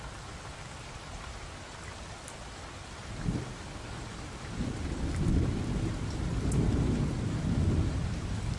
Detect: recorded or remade recorded